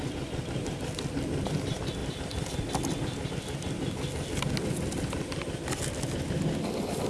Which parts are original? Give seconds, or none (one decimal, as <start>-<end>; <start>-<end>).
0.0-2.0; 3.3-7.1